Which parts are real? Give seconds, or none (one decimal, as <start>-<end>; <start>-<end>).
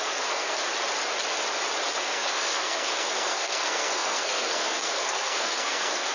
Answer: 0.6-2.0